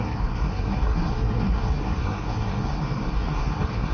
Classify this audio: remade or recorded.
remade